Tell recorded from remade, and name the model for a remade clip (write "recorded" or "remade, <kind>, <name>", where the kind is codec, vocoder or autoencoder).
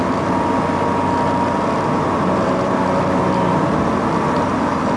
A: recorded